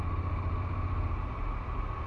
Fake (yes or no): no